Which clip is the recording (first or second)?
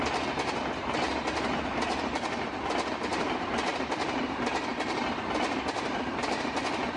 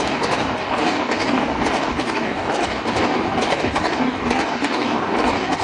first